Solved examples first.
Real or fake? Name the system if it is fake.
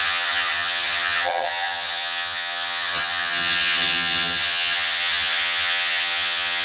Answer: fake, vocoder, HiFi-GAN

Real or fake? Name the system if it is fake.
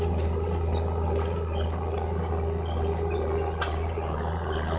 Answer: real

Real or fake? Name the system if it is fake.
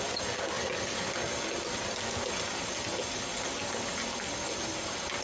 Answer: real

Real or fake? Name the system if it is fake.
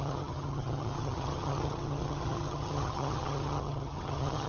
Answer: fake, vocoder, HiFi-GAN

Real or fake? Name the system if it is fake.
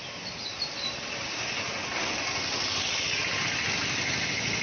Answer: real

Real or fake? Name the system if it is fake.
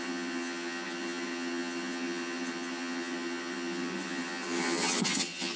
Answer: fake, vocoder, HiFi-GAN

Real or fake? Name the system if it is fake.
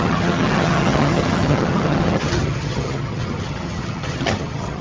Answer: fake, vocoder, HiFi-GAN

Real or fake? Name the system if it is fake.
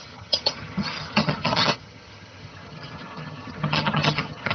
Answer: fake, vocoder, HiFi-GAN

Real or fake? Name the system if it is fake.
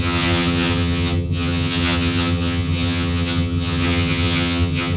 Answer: fake, vocoder, HiFi-GAN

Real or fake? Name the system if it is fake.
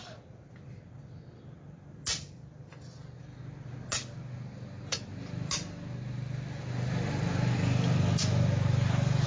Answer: real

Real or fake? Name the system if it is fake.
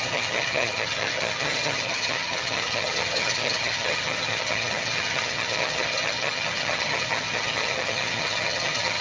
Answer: fake, vocoder, HiFi-GAN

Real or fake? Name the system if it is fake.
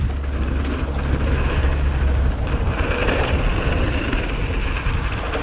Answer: real